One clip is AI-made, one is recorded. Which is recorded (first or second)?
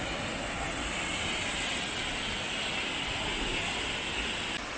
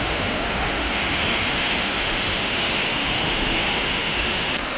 first